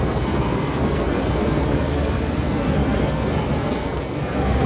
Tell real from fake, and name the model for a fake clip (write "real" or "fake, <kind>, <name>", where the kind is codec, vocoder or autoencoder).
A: fake, codec, SNAC